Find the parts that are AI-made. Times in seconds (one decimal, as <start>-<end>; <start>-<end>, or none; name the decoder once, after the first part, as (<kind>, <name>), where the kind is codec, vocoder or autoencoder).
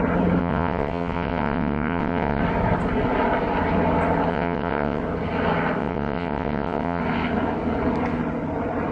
0.4-2.4 (vocoder, WaveNeXt); 4.3-5.0; 5.8-7.0